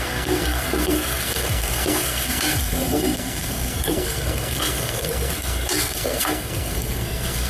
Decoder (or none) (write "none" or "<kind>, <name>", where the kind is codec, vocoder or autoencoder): codec, SNAC